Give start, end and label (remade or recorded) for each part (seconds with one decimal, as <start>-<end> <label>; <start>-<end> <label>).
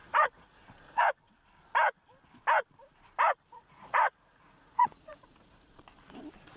0.0-1.0 remade; 1.0-3.5 recorded; 3.5-5.8 remade; 5.8-6.6 recorded